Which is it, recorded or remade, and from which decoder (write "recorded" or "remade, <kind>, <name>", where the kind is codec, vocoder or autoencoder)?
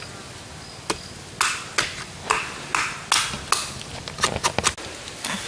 recorded